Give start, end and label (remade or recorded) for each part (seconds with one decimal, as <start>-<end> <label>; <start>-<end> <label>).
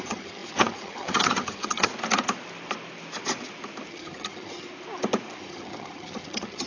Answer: 0.0-1.9 remade; 1.9-3.9 recorded; 3.9-4.7 remade; 4.7-5.4 recorded; 5.4-6.7 remade